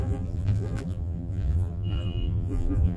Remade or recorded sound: remade